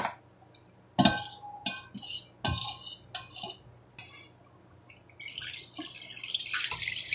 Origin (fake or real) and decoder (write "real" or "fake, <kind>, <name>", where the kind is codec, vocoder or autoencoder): real